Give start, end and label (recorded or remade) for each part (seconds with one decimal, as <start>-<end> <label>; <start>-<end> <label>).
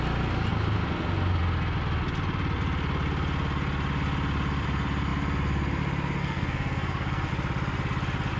0.0-6.2 recorded; 6.2-7.3 remade; 7.3-8.4 recorded